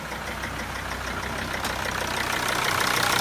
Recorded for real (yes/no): yes